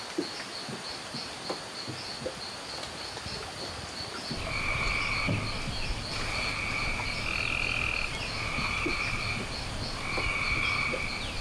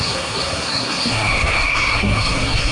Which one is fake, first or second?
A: second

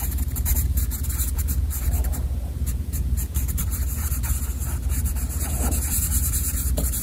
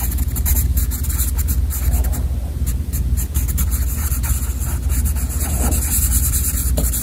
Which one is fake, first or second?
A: first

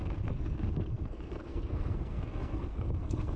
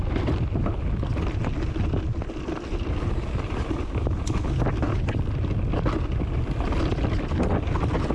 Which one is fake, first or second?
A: first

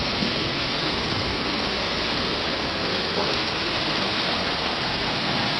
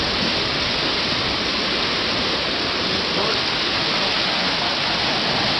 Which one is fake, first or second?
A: first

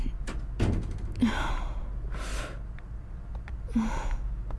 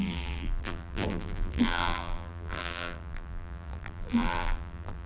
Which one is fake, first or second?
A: second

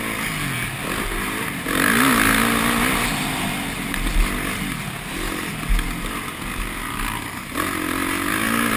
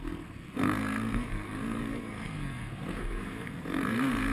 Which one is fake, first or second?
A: second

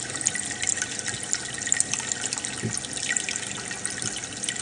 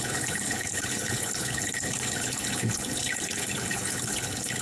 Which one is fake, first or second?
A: second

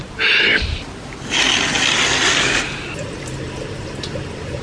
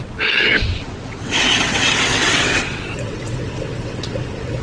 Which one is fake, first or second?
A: second